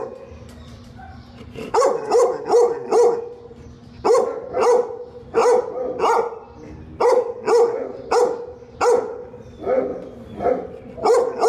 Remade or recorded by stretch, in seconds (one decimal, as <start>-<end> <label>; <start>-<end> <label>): 0.0-11.5 recorded